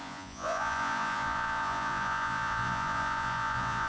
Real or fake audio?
fake